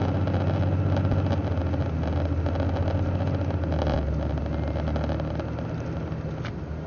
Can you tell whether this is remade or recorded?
recorded